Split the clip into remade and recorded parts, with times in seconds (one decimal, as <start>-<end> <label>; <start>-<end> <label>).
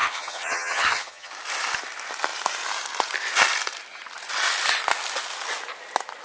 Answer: 0.0-1.3 remade; 1.3-6.2 recorded